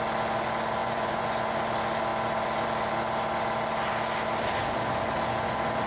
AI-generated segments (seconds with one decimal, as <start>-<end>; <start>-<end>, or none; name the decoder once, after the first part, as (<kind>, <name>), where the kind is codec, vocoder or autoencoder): 0.8-1.6 (vocoder, Vocos)